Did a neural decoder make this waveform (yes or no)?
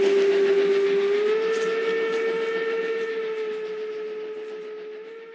no